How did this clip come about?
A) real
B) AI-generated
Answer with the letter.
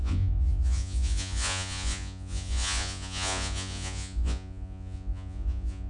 B